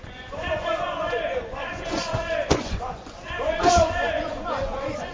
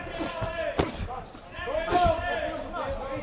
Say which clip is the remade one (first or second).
first